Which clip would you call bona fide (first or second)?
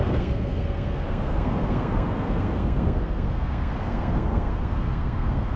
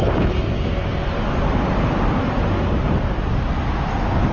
second